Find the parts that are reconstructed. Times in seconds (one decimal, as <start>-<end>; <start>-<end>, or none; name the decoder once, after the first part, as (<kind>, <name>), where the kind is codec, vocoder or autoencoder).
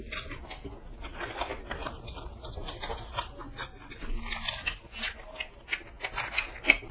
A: none